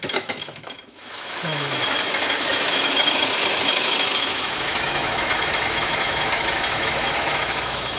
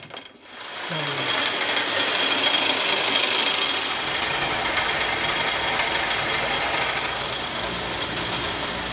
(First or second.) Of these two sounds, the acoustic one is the second